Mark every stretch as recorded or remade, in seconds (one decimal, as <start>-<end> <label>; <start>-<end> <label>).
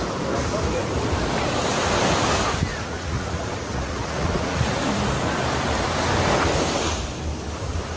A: 0.0-2.7 recorded; 2.7-4.8 remade; 4.8-8.0 recorded